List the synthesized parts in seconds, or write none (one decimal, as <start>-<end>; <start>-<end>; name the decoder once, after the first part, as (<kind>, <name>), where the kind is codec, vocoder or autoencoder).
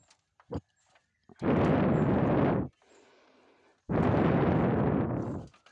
0.0-0.8 (vocoder, BigVGAN v2)